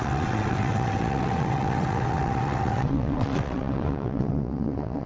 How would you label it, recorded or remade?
remade